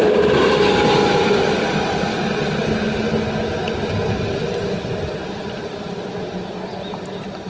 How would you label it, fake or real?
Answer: real